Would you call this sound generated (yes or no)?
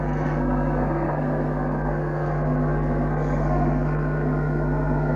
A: yes